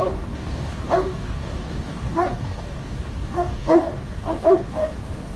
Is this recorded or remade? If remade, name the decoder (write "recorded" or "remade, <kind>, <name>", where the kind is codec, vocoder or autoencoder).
remade, codec, DAC